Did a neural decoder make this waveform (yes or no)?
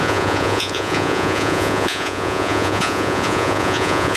yes